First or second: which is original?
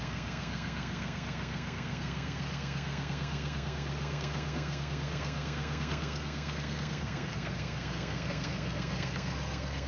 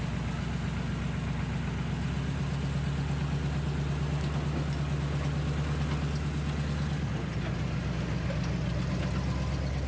second